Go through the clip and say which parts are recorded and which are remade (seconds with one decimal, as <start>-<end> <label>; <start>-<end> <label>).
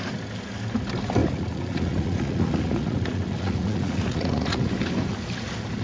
0.0-1.2 recorded; 1.2-4.7 remade; 4.7-5.8 recorded